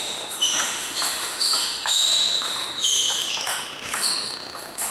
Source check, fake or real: fake